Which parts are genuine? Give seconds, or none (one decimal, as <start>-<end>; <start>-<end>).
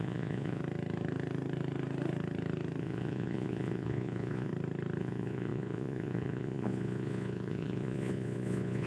0.6-2.8; 4.5-5.0